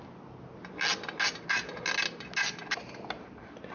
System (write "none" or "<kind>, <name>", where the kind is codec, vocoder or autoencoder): none